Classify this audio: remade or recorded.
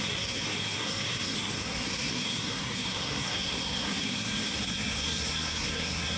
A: remade